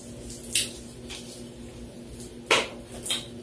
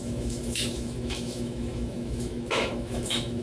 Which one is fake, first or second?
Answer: second